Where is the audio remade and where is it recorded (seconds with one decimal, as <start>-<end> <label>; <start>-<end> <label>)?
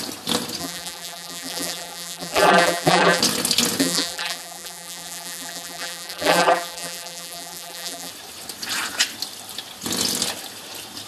0.0-0.6 recorded; 0.6-3.2 remade; 3.2-3.8 recorded; 3.8-8.1 remade; 8.1-11.1 recorded